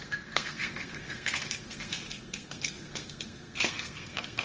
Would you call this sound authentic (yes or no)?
no